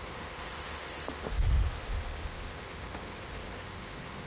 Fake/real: fake